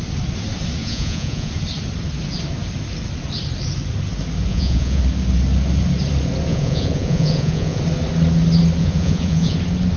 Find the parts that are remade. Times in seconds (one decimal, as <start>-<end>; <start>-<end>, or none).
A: 0.8-1.5; 4.5-5.0; 6.5-7.8; 8.8-9.6